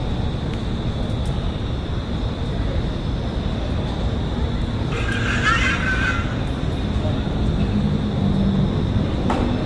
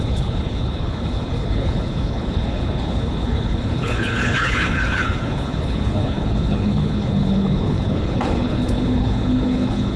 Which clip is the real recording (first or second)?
first